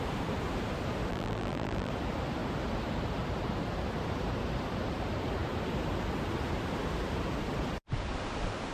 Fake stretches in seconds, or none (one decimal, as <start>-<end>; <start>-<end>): 1.1-1.9